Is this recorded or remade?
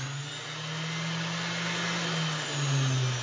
recorded